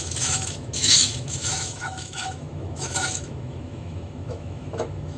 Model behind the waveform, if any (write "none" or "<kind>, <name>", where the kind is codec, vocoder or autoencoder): autoencoder, DAC-VAE